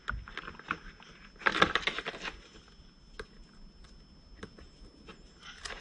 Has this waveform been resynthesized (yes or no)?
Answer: no